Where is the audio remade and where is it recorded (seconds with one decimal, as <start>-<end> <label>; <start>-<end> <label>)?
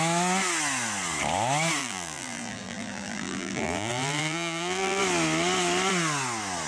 0.0-1.8 recorded; 1.8-5.0 remade; 5.0-6.7 recorded